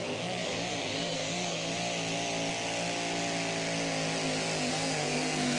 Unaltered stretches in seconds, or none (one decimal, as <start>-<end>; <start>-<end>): 1.7-4.7